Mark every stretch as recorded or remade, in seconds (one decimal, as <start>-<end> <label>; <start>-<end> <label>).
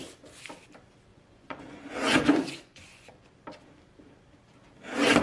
0.0-1.1 recorded; 1.1-3.1 remade; 3.1-5.2 recorded